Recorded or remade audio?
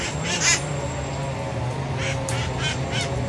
recorded